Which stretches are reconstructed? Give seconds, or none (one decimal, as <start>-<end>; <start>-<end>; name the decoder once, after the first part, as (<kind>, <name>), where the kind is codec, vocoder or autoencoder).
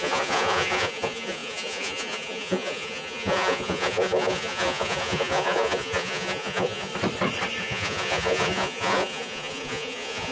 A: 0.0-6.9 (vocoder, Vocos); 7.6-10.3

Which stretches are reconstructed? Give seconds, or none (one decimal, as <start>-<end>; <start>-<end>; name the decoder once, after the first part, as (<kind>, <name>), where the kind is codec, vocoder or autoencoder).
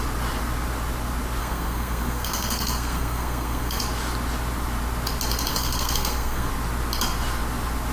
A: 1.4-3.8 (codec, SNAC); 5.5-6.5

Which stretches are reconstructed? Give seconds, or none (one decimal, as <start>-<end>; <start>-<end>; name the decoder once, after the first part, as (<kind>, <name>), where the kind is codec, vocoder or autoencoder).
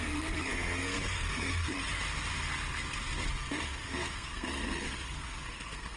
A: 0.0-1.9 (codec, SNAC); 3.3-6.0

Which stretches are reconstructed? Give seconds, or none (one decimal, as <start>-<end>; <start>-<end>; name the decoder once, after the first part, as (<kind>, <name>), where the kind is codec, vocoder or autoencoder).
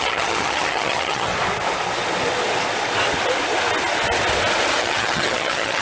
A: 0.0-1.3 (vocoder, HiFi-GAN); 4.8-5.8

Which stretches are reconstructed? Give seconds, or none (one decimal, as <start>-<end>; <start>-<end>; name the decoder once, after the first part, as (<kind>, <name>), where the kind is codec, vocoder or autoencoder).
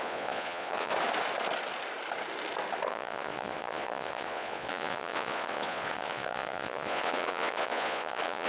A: 0.0-0.9 (vocoder, Vocos); 2.9-8.5